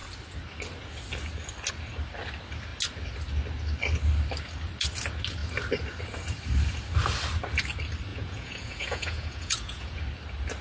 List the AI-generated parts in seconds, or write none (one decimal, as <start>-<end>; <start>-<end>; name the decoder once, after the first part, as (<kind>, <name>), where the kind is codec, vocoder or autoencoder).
8.1-10.0 (vocoder, Vocos)